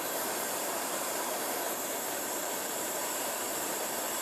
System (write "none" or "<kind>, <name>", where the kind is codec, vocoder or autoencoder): vocoder, BigVGAN v2